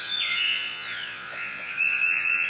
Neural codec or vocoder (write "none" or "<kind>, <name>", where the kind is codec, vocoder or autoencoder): vocoder, Vocos